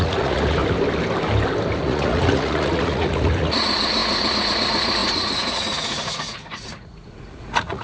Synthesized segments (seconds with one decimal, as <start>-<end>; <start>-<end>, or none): 0.0-0.6; 1.8-7.8